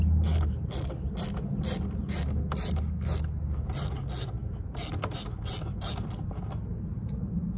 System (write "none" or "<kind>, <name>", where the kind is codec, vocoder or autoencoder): none